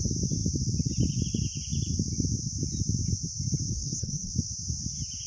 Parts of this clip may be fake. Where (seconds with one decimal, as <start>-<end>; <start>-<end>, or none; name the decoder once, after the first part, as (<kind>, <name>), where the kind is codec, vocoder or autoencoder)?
3.7-4.3 (codec, SNAC)